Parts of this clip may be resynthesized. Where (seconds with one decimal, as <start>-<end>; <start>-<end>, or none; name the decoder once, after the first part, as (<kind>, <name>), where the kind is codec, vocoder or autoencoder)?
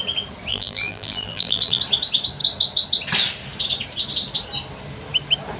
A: 0.5-1.8 (vocoder, BigVGAN v2)